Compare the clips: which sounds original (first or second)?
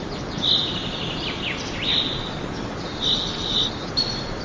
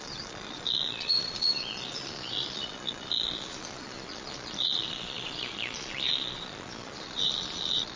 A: first